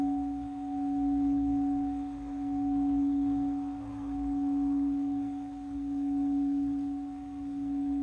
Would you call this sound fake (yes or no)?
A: yes